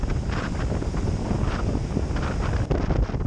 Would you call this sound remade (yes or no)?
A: no